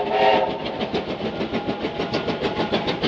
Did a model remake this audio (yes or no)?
no